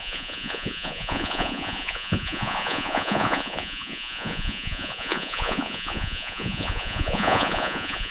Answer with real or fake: fake